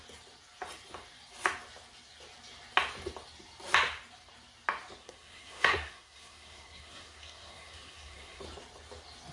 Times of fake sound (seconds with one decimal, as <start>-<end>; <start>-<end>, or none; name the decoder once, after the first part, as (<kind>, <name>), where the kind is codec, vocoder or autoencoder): 5.0-8.4 (codec, SNAC)